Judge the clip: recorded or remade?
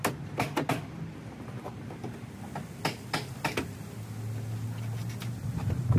recorded